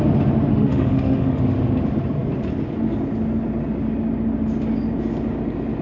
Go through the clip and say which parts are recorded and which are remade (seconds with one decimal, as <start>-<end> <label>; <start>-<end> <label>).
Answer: 0.0-0.5 recorded; 0.5-1.4 remade; 1.4-5.8 recorded